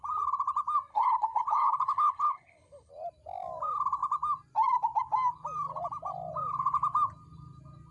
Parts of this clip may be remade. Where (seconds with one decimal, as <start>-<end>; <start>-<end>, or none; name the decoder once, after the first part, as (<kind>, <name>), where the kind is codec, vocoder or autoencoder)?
0.9-2.9 (codec, HILCodec)